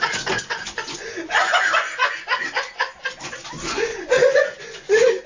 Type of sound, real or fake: fake